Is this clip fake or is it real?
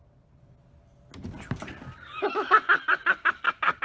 real